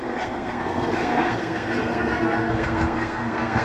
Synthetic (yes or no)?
yes